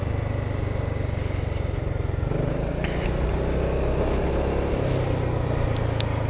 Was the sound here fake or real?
real